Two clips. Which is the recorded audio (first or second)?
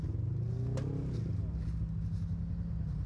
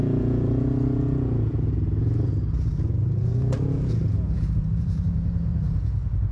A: first